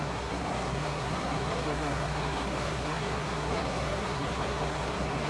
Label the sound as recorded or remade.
remade